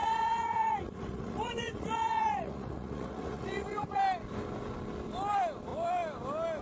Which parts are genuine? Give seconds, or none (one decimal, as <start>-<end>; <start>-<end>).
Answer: 4.0-6.6